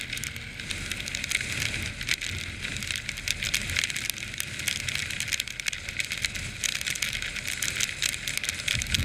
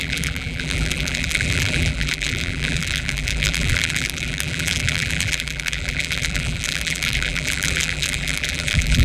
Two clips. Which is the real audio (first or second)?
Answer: first